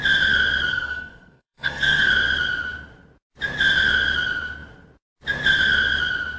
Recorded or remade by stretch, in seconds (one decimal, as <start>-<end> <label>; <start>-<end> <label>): 0.0-0.7 recorded; 0.7-2.1 remade; 2.1-6.4 recorded